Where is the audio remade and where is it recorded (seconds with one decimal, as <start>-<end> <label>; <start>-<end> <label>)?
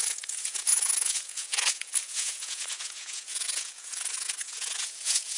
0.0-5.4 remade